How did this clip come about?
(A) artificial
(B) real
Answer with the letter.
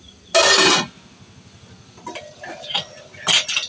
B